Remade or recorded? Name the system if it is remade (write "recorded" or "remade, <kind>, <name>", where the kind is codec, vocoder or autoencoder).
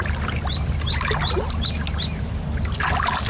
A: recorded